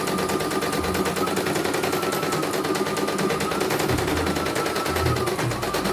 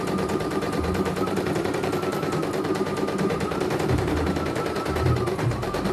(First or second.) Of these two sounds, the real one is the first